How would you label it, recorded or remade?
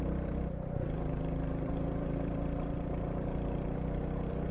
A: remade